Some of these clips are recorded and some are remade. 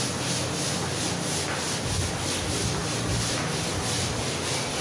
recorded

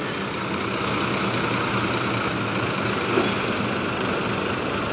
recorded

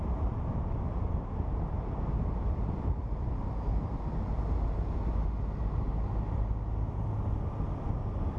recorded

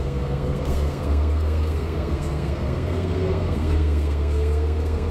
remade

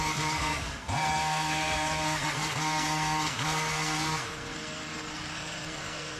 remade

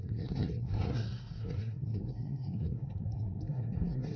remade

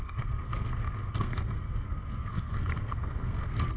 remade